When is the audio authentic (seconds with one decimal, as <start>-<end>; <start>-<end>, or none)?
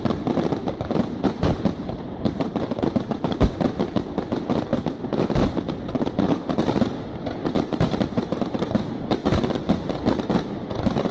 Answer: 0.0-0.6; 4.1-4.7; 5.9-7.4; 8.7-11.1